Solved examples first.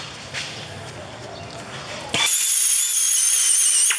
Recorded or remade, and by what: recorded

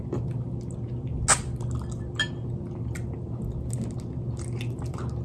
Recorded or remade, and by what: recorded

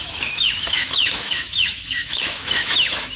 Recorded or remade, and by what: remade, autoencoder, DAC-VAE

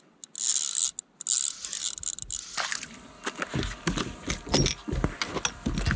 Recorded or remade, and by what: recorded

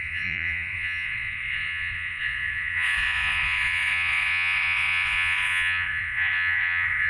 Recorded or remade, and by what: remade, vocoder, Vocos